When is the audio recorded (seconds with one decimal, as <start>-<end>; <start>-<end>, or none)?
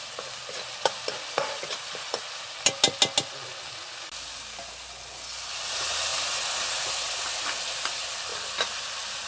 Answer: 0.0-9.3